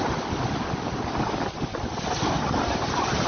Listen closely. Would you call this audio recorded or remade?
recorded